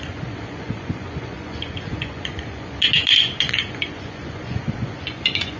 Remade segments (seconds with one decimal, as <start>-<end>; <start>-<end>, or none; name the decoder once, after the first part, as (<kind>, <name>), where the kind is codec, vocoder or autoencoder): 0.0-5.6 (vocoder, Vocos)